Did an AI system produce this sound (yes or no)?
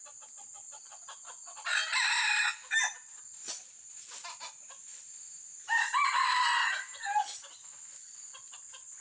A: no